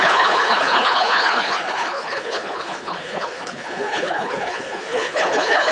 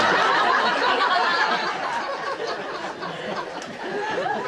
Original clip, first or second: second